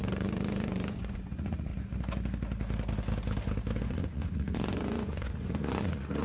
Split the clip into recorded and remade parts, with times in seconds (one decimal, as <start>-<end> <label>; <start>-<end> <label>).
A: 0.0-1.7 remade; 1.7-3.8 recorded; 3.8-6.2 remade

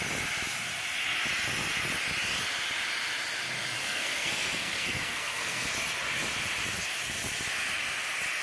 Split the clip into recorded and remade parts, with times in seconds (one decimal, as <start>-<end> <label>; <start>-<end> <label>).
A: 0.0-3.8 recorded; 3.8-5.7 remade; 5.7-8.4 recorded

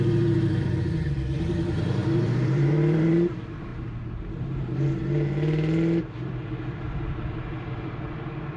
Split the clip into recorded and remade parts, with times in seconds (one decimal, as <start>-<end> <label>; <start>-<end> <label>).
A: 0.0-3.7 remade; 3.7-6.0 recorded; 6.0-8.6 remade

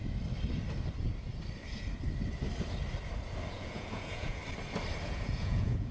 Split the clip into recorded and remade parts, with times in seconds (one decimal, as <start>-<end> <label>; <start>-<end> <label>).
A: 0.0-3.5 recorded; 3.5-4.4 remade; 4.4-5.0 recorded; 5.0-5.9 remade

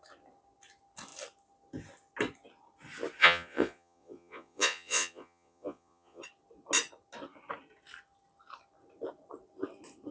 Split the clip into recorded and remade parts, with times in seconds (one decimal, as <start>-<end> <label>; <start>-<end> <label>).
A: 0.0-3.2 recorded; 3.2-6.2 remade; 6.2-10.1 recorded

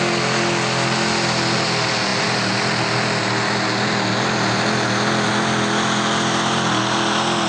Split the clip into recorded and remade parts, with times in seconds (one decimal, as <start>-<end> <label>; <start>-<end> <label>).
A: 0.0-7.5 recorded